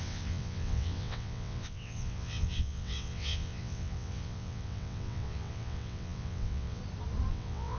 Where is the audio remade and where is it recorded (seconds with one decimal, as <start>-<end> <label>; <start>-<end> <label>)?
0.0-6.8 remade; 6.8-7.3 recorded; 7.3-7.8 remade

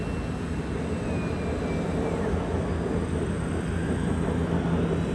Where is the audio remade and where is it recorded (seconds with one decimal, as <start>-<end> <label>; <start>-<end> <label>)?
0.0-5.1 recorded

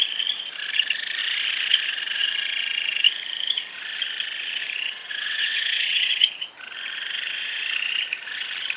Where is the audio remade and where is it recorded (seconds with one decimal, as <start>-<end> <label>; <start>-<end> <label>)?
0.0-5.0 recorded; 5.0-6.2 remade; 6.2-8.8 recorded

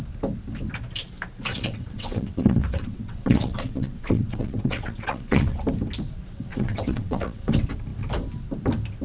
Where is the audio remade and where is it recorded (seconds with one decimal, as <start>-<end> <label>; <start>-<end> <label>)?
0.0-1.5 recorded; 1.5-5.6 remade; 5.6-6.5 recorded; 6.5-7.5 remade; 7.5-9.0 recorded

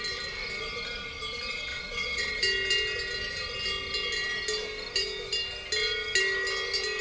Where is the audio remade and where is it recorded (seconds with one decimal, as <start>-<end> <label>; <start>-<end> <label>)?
0.0-1.7 recorded; 1.7-2.4 remade; 2.4-7.0 recorded

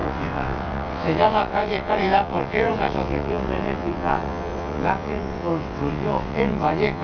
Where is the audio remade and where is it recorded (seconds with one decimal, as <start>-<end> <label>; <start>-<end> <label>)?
0.0-7.0 remade

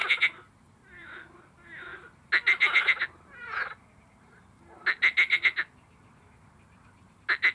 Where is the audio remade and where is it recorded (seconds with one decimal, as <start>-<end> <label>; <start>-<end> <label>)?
0.0-7.5 recorded

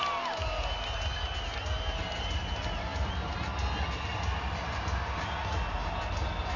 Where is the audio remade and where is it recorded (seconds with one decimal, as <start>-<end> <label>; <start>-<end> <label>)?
0.0-6.6 recorded